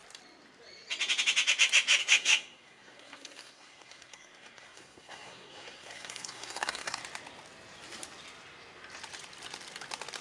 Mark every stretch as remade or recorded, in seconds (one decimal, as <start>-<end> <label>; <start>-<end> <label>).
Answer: 0.0-2.0 recorded; 2.0-7.0 remade; 7.0-10.2 recorded